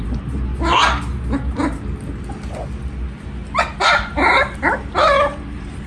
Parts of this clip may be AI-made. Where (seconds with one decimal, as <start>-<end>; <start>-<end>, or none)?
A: 0.0-0.5; 3.9-5.9